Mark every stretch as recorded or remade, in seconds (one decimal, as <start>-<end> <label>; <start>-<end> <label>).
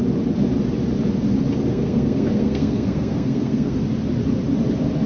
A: 0.0-1.7 recorded; 1.7-3.8 remade; 3.8-5.1 recorded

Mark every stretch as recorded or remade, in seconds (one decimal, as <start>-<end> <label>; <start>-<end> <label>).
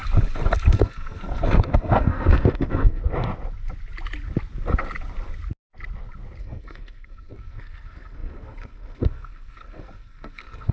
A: 0.0-0.7 recorded; 0.7-3.0 remade; 3.0-6.4 recorded; 6.4-10.7 remade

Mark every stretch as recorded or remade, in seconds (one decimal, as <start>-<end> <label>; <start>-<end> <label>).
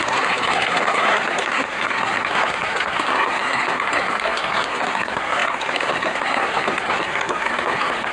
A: 0.0-8.1 remade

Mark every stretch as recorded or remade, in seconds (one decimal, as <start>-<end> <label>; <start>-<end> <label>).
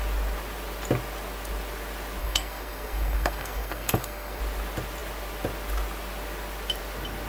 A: 0.0-2.2 recorded; 2.2-4.4 remade; 4.4-7.3 recorded